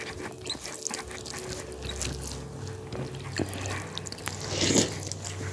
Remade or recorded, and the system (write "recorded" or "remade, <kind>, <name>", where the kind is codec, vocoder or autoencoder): recorded